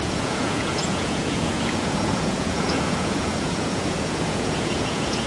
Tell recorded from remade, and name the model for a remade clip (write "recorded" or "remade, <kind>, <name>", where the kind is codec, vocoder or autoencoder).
remade, vocoder, Vocos